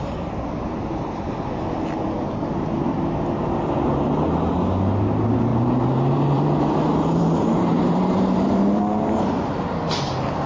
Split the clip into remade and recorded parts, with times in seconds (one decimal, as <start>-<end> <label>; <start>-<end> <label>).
0.0-5.5 recorded; 5.5-8.8 remade; 8.8-10.5 recorded